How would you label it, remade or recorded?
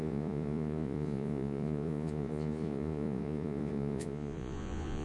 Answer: remade